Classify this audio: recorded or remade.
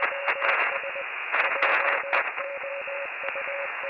remade